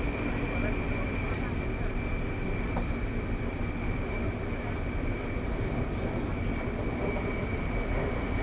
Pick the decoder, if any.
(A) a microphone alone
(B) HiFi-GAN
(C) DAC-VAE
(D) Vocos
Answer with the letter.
A